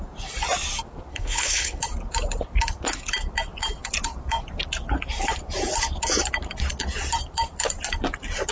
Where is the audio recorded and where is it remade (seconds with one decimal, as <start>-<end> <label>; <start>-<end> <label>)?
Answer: 0.0-1.1 recorded; 1.1-1.8 remade; 1.8-8.5 recorded